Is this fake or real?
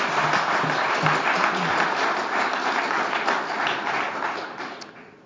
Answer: real